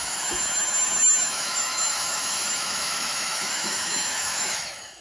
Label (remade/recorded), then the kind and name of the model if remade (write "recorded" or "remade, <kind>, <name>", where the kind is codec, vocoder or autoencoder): remade, autoencoder, DAC-VAE